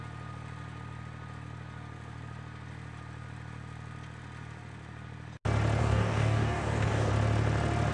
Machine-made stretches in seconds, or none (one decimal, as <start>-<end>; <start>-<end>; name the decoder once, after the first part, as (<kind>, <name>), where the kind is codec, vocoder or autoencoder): 5.8-7.1 (codec, DAC)